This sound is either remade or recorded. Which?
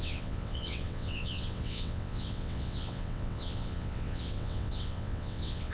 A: remade